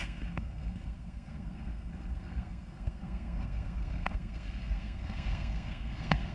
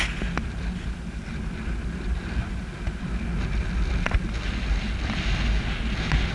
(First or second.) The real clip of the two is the second